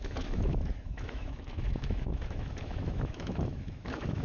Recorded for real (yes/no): no